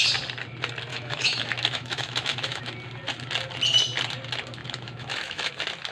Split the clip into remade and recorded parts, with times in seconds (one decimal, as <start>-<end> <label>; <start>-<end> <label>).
0.0-0.9 recorded; 0.9-2.6 remade; 2.6-4.6 recorded; 4.6-5.5 remade; 5.5-5.9 recorded